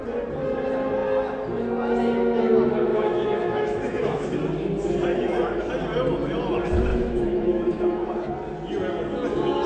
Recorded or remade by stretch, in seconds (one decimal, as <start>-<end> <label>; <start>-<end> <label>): 0.0-2.9 recorded; 2.9-4.4 remade; 4.4-5.1 recorded; 5.1-5.6 remade; 5.6-6.9 recorded; 6.9-8.3 remade; 8.3-9.7 recorded